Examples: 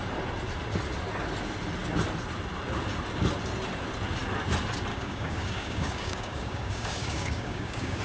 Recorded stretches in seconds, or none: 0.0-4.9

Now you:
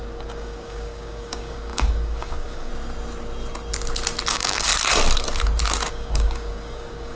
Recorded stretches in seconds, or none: 2.7-4.3; 4.7-5.9

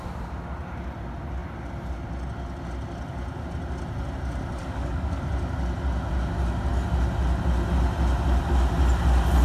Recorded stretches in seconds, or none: 0.0-4.6; 5.2-9.4